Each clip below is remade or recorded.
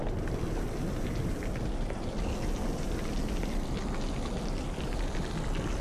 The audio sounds recorded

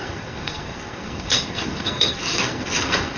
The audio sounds remade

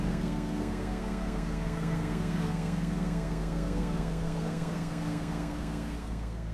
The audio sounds remade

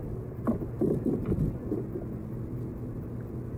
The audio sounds recorded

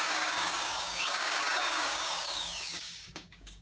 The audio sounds remade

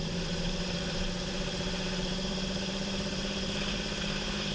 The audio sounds remade